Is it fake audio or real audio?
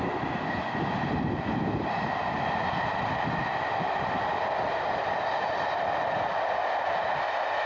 real